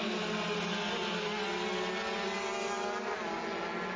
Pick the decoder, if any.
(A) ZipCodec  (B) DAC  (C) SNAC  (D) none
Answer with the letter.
D